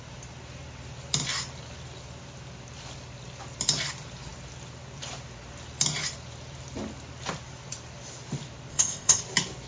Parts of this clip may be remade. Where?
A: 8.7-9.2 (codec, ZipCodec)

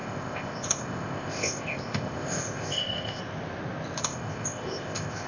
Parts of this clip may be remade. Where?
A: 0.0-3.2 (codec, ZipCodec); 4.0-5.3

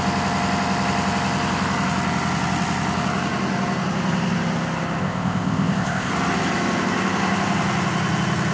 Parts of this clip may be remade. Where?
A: 5.0-6.1 (codec, ZipCodec)